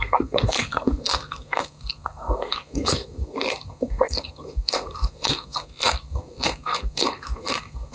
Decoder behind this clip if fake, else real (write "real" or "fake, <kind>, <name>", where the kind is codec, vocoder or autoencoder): fake, codec, SNAC